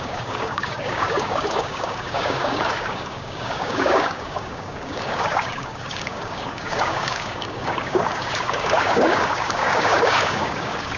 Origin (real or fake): fake